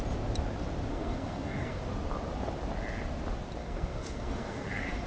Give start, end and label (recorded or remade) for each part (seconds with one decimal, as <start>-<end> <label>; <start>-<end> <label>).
0.0-0.9 recorded; 0.9-1.8 remade; 1.8-3.6 recorded; 3.6-5.1 remade